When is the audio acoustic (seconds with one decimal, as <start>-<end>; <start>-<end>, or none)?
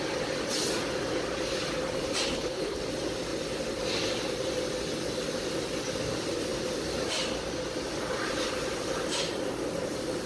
0.0-2.3; 2.8-10.3